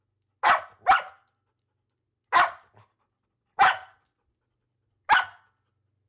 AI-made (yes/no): no